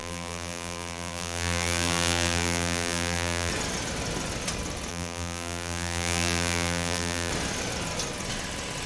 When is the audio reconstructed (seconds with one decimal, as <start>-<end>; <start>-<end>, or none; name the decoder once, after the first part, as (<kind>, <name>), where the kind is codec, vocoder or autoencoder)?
0.0-3.5 (vocoder, BigVGAN v2); 4.9-7.3